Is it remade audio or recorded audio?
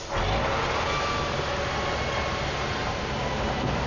recorded